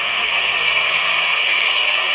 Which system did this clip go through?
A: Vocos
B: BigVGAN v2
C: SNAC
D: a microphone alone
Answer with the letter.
C